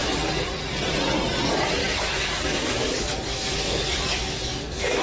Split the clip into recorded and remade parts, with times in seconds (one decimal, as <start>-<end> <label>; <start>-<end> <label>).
0.0-1.8 recorded; 1.8-5.0 remade